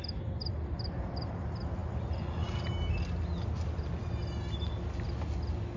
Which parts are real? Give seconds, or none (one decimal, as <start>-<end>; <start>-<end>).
0.0-5.8